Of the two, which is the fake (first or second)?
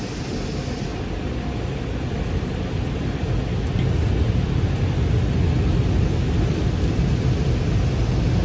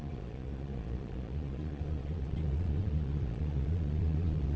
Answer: second